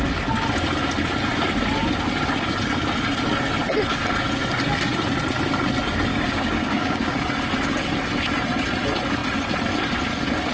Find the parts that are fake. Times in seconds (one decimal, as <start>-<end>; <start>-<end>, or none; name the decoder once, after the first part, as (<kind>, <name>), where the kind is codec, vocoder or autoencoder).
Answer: 6.1-7.2 (codec, DAC)